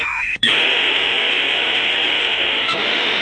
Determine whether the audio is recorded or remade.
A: remade